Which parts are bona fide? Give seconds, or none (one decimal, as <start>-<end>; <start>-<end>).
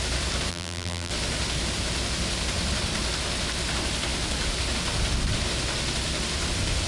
0.0-0.5; 1.1-6.9